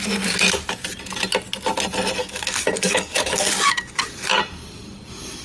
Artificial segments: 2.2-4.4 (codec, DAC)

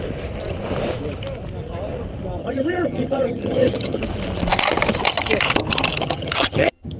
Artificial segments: 2.4-4.0 (vocoder, HiFi-GAN); 6.0-7.0

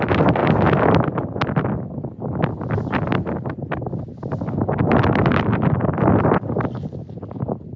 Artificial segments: 5.2-7.8 (vocoder, BigVGAN v2)

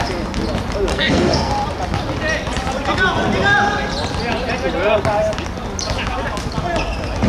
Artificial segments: 0.9-1.5 (codec, SNAC)

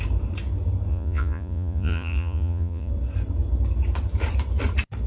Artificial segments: 0.9-2.9 (vocoder, Vocos)

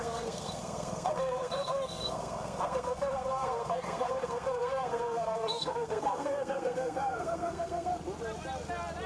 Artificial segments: 0.0-7.9 (codec, SNAC)

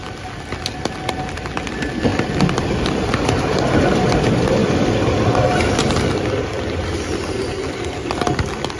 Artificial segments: 2.1-2.9 (vocoder, BigVGAN v2); 4.6-5.2

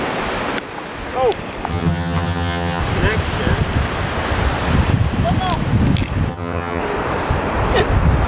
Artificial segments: 1.7-2.8 (vocoder, HiFi-GAN); 6.3-6.8